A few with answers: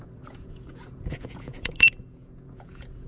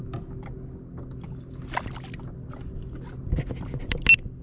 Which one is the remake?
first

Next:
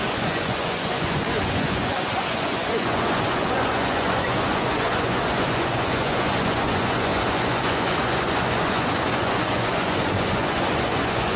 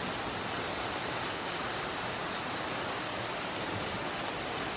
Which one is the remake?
first